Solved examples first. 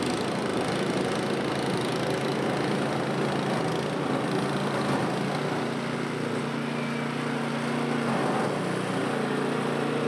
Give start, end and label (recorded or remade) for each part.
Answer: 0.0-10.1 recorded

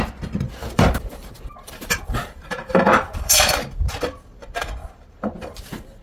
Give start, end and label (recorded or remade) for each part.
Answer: 0.0-0.6 recorded; 0.6-3.5 remade; 3.5-4.8 recorded; 4.8-5.6 remade; 5.6-6.0 recorded

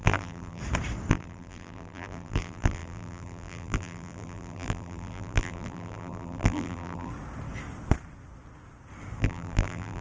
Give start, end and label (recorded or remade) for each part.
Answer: 0.0-0.6 remade; 0.6-1.1 recorded; 1.1-7.1 remade; 7.1-9.2 recorded; 9.2-10.0 remade

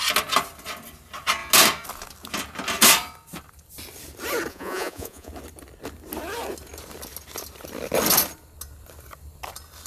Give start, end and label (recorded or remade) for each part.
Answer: 0.0-4.5 recorded; 4.5-5.3 remade; 5.3-9.9 recorded

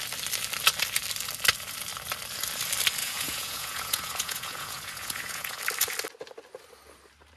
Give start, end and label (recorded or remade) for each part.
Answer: 0.0-3.0 recorded; 3.0-5.6 remade; 5.6-7.4 recorded

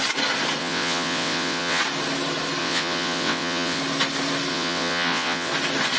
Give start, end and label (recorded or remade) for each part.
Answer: 0.0-0.6 recorded; 0.6-1.8 remade; 1.8-2.6 recorded; 2.6-3.8 remade; 3.8-4.5 recorded; 4.5-5.5 remade; 5.5-6.0 recorded

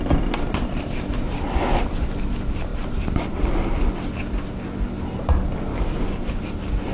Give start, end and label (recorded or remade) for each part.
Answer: 0.0-5.7 recorded; 5.7-6.5 remade; 6.5-6.9 recorded

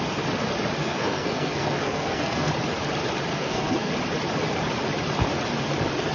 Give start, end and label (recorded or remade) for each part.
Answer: 0.0-0.8 recorded; 0.8-2.5 remade; 2.5-3.3 recorded; 3.3-3.9 remade; 3.9-6.1 recorded